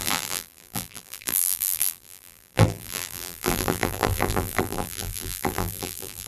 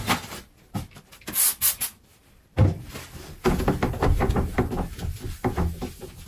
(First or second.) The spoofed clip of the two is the first